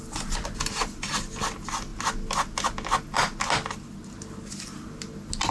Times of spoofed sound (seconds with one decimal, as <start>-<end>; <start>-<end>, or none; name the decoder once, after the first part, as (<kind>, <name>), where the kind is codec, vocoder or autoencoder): none